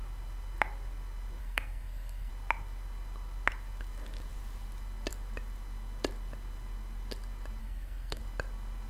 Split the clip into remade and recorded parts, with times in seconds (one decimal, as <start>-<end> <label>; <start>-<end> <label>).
0.0-1.4 recorded; 1.4-2.3 remade; 2.3-7.6 recorded; 7.6-8.2 remade; 8.2-8.9 recorded

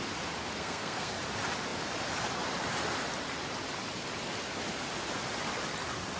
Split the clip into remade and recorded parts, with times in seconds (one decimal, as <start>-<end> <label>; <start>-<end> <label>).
0.0-0.6 recorded; 0.6-1.1 remade; 1.1-6.2 recorded

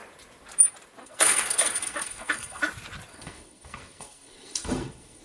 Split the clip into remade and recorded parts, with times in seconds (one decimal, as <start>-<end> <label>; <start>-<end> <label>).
0.0-1.0 recorded; 1.0-2.6 remade; 2.6-3.1 recorded; 3.1-5.2 remade

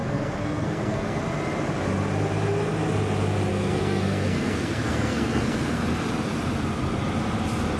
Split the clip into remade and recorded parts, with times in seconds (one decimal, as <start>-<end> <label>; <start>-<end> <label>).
0.0-1.2 remade; 1.2-3.5 recorded; 3.5-5.8 remade; 5.8-7.8 recorded